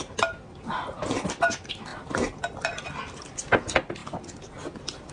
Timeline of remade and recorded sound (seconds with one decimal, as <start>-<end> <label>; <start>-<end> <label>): 0.0-5.1 recorded